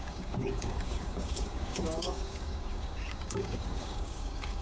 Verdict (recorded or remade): remade